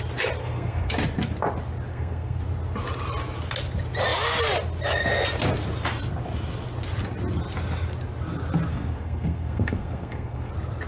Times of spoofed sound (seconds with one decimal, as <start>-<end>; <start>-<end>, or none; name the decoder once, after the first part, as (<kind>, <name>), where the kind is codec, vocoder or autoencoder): 0.4-0.9 (codec, SNAC); 1.9-2.4; 8.7-10.5